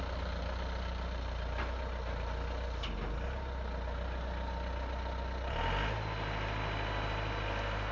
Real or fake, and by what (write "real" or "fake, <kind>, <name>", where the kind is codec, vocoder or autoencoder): real